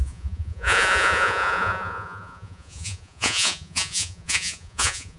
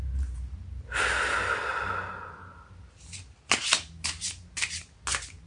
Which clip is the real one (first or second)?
second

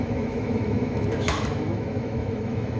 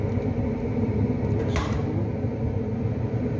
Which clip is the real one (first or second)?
second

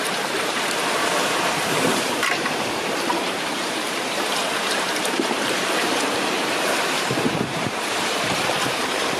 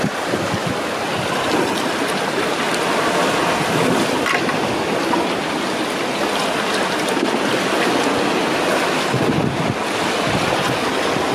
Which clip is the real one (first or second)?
second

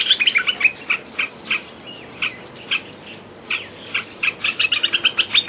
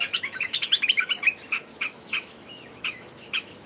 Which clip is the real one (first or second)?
first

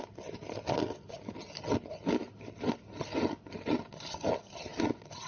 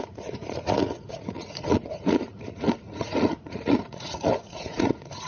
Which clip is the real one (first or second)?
first